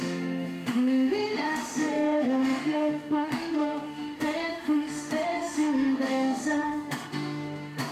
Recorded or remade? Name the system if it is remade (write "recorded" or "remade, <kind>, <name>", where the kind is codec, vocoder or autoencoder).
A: remade, autoencoder, DAC-VAE